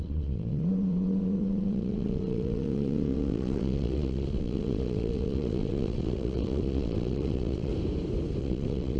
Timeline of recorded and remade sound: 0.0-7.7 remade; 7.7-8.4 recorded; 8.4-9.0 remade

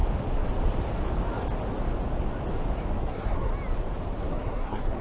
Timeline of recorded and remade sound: 0.0-3.0 recorded; 3.0-3.5 remade; 3.5-4.2 recorded; 4.2-5.0 remade

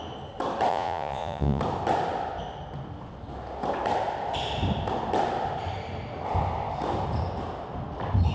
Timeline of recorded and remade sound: 0.0-0.7 recorded; 0.7-1.6 remade; 1.6-8.3 recorded

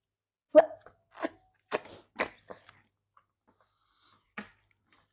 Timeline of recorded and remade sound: 0.0-5.1 recorded